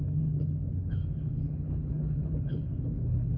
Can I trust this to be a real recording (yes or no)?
no